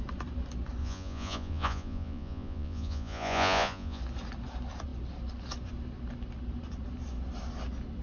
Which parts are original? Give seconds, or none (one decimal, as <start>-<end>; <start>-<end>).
0.0-0.8; 4.0-8.0